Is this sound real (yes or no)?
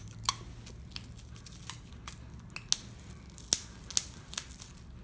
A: yes